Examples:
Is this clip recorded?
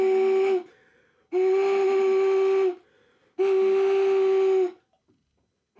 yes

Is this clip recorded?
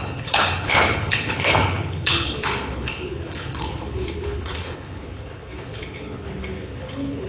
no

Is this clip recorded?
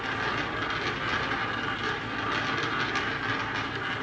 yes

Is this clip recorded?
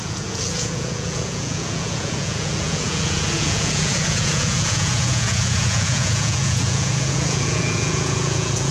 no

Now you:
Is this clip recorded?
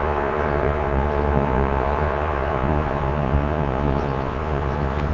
no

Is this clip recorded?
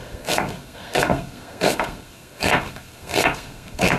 no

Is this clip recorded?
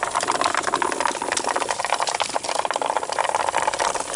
yes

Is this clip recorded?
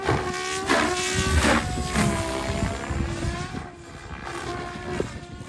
yes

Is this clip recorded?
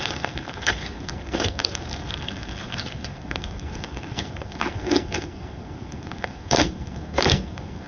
no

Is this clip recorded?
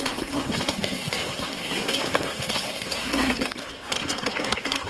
no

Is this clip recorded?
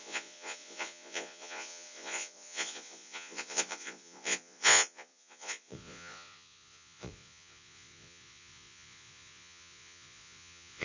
no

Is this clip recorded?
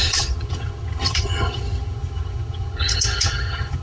no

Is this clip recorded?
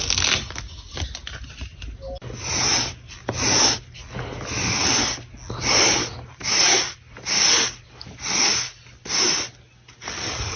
yes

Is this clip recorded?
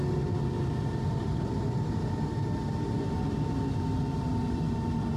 yes